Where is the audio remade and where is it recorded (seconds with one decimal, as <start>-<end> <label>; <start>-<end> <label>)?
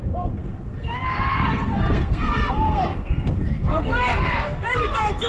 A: 0.0-5.3 remade